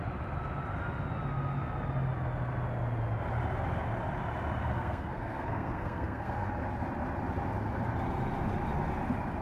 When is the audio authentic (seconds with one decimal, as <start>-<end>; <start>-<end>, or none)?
0.0-4.6; 6.5-9.4